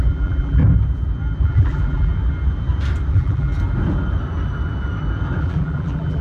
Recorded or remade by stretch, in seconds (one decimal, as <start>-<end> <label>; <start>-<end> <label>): 0.0-0.6 remade; 0.6-1.4 recorded; 1.4-2.1 remade; 2.1-3.1 recorded; 3.1-3.5 remade; 3.5-5.4 recorded; 5.4-6.2 remade